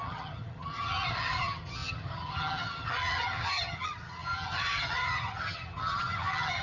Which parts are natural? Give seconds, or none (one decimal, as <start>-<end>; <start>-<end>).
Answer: none